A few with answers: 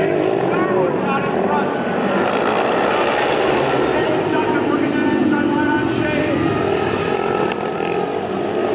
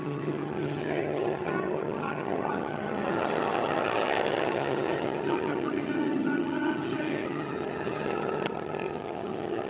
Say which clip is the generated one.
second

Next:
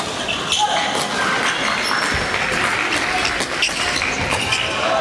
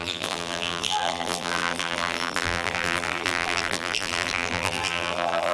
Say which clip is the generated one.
second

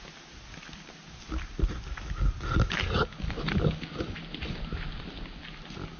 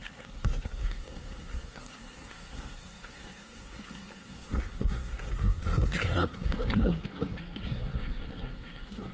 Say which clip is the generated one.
second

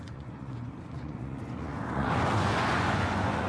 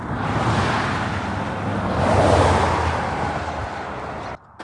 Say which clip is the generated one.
first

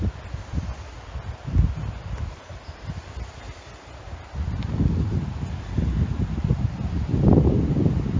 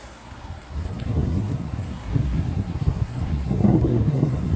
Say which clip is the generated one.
second